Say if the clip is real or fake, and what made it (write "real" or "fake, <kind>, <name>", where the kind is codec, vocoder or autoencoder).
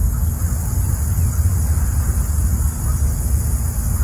real